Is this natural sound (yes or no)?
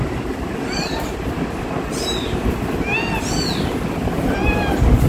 yes